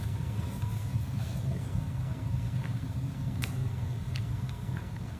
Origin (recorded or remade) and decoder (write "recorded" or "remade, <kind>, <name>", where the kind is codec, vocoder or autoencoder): remade, codec, SNAC